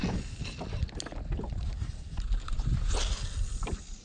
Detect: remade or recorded recorded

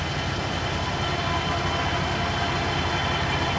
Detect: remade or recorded recorded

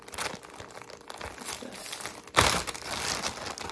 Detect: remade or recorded recorded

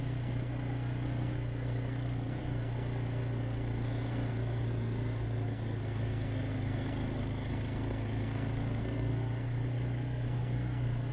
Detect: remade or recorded remade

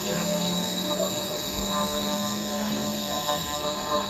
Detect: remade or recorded remade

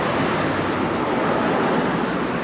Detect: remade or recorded recorded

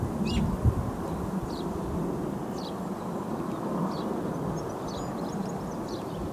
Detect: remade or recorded recorded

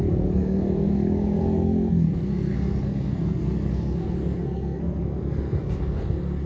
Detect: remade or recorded remade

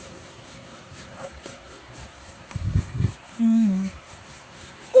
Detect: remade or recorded remade